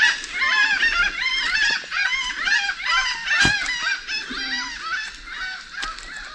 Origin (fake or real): real